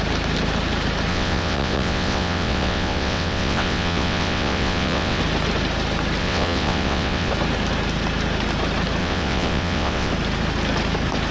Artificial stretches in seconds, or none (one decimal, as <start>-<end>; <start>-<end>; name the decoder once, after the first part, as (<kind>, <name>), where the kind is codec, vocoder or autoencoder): 1.1-5.2 (vocoder, WaveNeXt); 6.2-7.3; 9.0-10.1

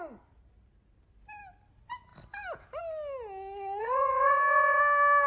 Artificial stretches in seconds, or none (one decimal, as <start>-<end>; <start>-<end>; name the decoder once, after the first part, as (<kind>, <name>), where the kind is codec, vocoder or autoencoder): 3.8-4.8 (vocoder, WaveNeXt)

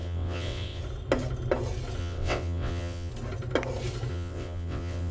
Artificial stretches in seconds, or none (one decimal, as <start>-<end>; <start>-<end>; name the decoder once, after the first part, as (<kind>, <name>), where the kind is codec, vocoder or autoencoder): 0.0-0.8 (vocoder, WaveNeXt); 2.0-3.1; 4.1-5.1

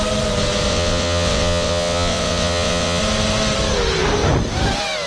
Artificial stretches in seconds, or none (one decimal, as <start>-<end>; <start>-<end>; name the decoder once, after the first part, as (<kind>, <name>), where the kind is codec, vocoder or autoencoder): 0.7-3.0 (vocoder, WaveNeXt)